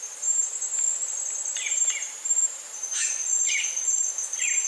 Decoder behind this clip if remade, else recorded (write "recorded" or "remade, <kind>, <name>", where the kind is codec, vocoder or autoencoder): remade, vocoder, BigVGAN v2